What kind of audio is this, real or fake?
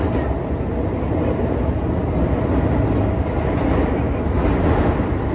real